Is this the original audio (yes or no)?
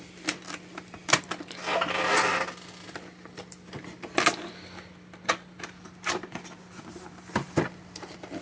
no